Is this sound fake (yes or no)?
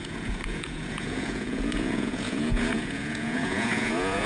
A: yes